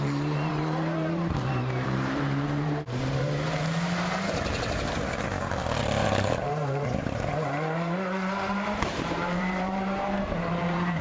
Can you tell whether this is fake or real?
fake